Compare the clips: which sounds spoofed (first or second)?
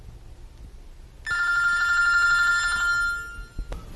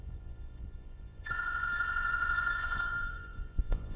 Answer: second